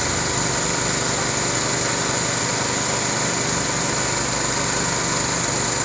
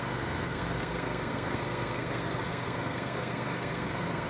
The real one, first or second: first